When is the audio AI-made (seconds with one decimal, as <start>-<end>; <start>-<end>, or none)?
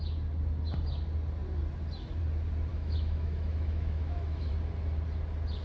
2.7-4.5